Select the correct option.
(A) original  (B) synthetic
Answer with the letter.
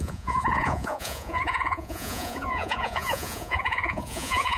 B